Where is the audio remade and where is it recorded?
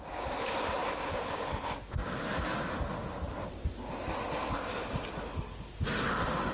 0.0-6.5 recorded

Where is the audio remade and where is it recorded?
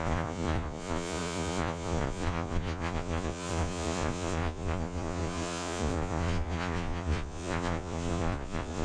0.0-8.8 remade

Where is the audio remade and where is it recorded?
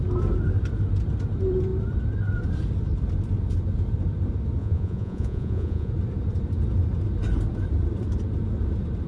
0.0-4.6 recorded; 4.6-5.9 remade; 5.9-9.1 recorded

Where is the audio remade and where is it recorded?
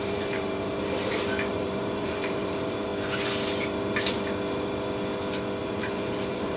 0.0-0.7 remade; 0.7-1.5 recorded; 1.5-2.9 remade; 2.9-5.6 recorded; 5.6-6.6 remade